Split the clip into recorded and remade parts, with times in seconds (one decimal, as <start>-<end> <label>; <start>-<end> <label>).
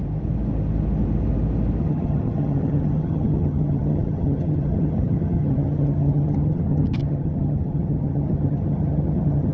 0.0-1.8 recorded; 1.8-9.5 remade